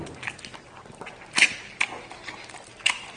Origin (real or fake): real